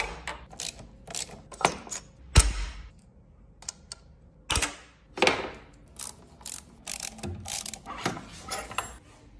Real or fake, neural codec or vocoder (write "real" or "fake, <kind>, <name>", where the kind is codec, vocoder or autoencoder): real